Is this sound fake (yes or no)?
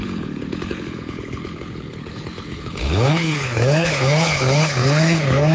yes